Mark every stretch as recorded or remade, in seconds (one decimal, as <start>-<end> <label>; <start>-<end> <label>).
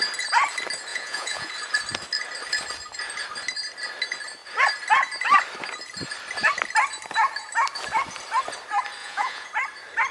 0.0-0.9 recorded; 0.9-1.5 remade; 1.5-9.0 recorded; 9.0-9.5 remade; 9.5-10.1 recorded